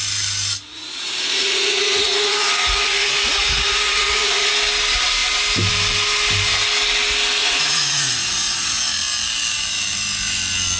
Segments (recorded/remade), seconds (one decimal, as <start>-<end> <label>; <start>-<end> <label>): 0.0-0.7 recorded; 0.7-4.5 remade; 4.5-7.4 recorded; 7.4-8.8 remade; 8.8-10.8 recorded